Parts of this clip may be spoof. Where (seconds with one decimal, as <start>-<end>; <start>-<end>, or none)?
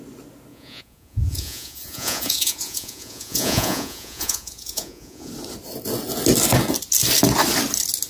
0.5-5.3